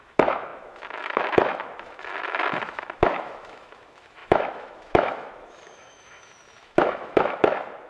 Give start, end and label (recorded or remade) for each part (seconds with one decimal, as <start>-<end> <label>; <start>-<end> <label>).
0.0-7.9 remade